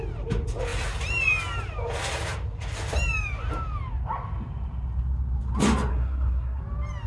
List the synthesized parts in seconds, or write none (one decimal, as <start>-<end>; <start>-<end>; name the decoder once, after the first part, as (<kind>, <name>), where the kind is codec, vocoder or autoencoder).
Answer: 5.9-6.6 (codec, SNAC)